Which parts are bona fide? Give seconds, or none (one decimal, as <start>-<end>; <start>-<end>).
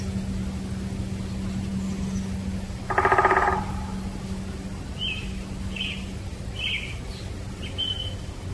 0.0-8.5